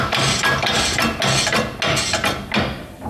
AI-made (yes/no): no